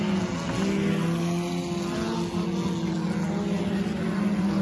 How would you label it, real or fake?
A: real